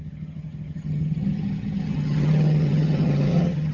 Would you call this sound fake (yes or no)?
yes